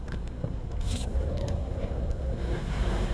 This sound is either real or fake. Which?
fake